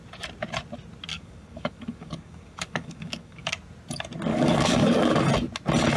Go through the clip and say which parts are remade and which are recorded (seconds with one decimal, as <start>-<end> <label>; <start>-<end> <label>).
0.0-1.1 recorded; 1.1-3.5 remade; 3.5-4.3 recorded; 4.3-5.2 remade; 5.2-6.0 recorded